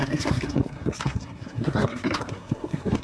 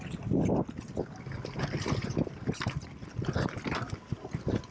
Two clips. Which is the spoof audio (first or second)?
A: first